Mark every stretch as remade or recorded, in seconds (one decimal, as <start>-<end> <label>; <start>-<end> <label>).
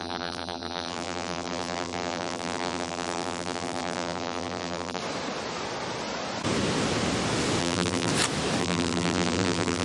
0.0-5.0 remade; 5.0-7.6 recorded; 7.6-8.1 remade; 8.1-8.6 recorded; 8.6-9.8 remade